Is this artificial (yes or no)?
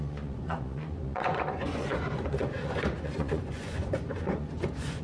yes